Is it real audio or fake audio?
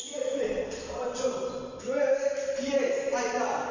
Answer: real